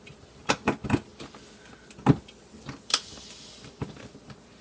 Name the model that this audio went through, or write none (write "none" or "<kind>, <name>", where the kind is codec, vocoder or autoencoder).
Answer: none